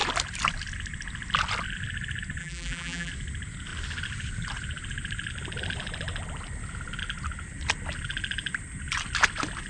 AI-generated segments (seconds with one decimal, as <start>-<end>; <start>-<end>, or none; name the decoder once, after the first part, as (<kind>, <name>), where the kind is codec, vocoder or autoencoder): 2.4-3.1 (vocoder, BigVGAN v2)